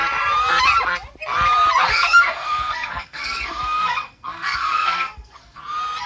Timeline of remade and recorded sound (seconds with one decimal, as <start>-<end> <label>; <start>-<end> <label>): 0.0-1.9 recorded; 1.9-5.6 remade; 5.6-6.1 recorded

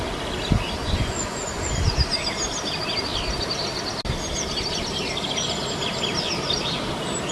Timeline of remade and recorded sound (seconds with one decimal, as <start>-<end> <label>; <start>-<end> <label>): 0.0-0.8 recorded; 0.8-1.9 remade; 1.9-7.3 recorded

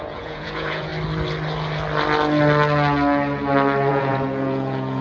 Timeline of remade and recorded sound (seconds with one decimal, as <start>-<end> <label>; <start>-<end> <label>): 0.0-0.9 remade; 0.9-3.9 recorded; 3.9-5.0 remade

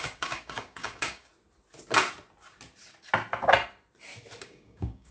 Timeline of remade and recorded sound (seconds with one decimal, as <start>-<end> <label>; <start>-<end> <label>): 0.0-1.3 remade; 1.3-4.4 recorded; 4.4-5.1 remade

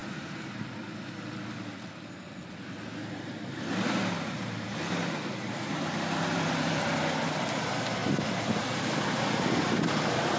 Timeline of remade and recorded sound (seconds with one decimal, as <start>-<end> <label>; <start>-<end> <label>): 0.0-4.9 recorded; 4.9-10.4 remade

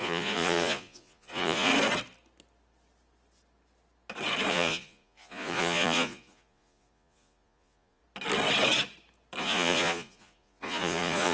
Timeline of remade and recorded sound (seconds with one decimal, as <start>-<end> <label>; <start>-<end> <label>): 0.0-1.7 remade; 1.7-4.5 recorded; 4.5-8.0 remade; 8.0-9.4 recorded; 9.4-11.3 remade

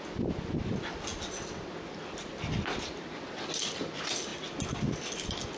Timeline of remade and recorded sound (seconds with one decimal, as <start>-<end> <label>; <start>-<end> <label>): 0.0-5.6 recorded